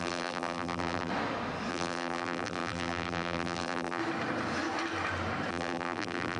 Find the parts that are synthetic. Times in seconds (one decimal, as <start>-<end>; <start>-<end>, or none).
0.0-1.1; 1.7-4.0; 5.5-6.4

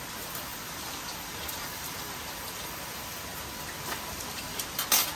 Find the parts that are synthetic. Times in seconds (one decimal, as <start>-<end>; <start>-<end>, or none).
0.5-2.3

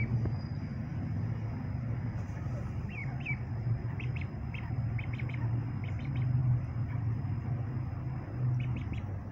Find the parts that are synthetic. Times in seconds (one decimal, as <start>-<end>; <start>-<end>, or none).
0.9-5.3

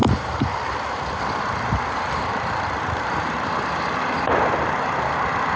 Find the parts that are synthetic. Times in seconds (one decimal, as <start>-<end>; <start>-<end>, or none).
0.0-1.2; 2.3-3.5

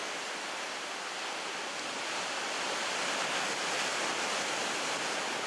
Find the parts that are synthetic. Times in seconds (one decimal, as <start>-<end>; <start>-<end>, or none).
none